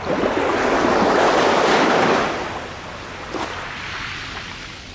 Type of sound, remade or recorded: recorded